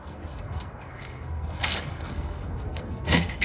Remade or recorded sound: remade